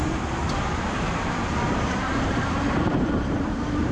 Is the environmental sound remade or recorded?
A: remade